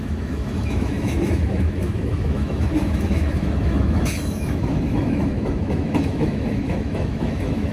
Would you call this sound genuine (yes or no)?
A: no